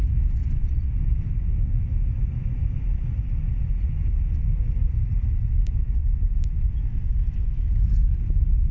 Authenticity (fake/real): real